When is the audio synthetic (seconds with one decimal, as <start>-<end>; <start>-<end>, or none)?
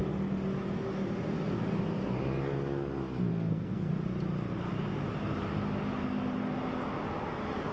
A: 3.3-3.9